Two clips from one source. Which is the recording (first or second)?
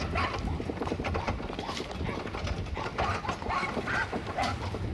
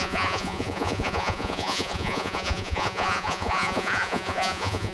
first